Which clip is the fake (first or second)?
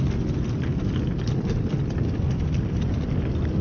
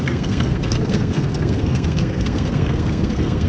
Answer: second